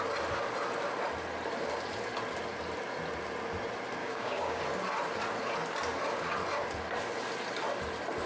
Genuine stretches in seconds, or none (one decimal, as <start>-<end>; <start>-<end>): 0.0-4.0; 4.6-8.3